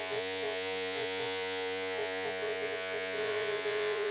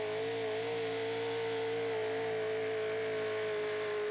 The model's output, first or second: first